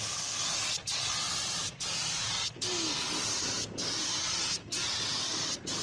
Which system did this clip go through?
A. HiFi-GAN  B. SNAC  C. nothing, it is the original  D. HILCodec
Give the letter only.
C